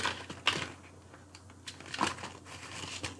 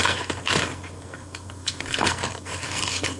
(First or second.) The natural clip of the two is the first